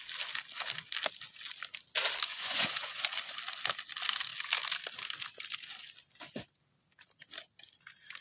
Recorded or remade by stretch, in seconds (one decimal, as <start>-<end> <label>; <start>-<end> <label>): 0.0-2.3 recorded; 2.3-3.0 remade; 3.0-8.2 recorded